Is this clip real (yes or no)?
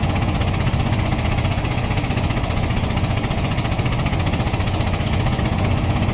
no